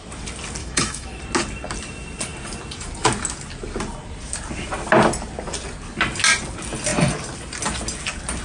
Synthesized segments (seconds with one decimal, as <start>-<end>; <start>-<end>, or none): 0.6-1.2

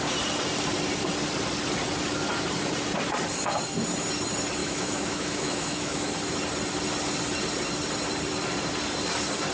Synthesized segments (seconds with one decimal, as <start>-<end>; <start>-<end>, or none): 4.6-6.1

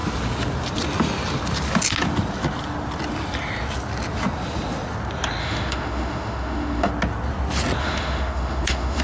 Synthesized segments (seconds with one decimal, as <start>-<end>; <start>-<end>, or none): 5.4-6.9; 7.8-9.0